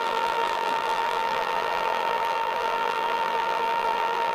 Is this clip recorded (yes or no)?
no